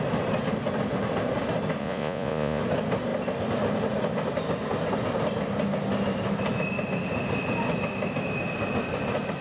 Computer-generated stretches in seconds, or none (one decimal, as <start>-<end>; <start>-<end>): 1.8-2.6